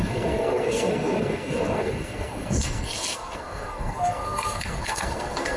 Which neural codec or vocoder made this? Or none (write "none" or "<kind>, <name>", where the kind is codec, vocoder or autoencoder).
codec, SNAC